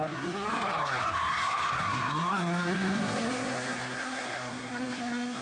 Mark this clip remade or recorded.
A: remade